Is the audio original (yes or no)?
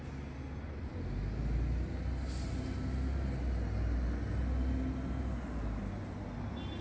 yes